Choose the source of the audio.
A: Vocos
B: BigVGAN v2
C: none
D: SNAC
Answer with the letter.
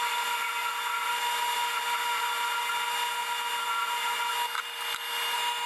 C